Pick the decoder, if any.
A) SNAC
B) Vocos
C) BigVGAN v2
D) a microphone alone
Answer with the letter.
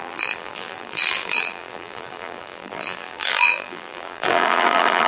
C